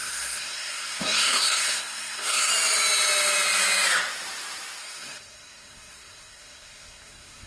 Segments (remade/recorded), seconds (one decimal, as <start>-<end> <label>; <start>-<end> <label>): 0.0-2.5 remade; 2.5-4.8 recorded; 4.8-7.5 remade